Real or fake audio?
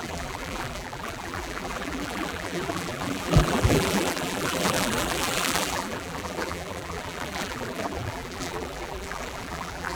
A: fake